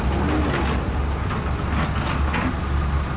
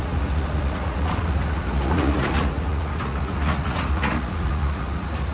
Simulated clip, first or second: second